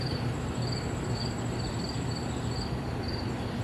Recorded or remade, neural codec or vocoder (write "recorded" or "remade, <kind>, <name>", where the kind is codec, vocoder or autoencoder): remade, vocoder, BigVGAN v2